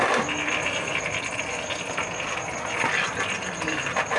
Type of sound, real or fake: real